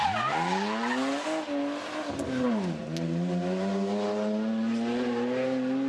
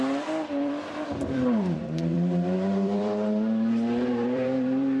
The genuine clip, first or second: first